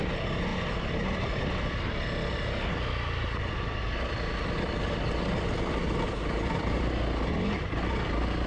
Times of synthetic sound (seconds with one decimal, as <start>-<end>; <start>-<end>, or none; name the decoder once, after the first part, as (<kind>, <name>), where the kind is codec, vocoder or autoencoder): none